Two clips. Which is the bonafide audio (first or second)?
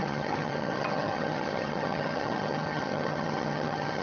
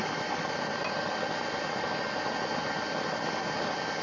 second